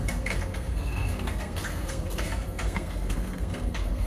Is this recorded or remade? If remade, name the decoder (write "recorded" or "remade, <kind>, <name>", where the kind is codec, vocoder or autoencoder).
remade, codec, SNAC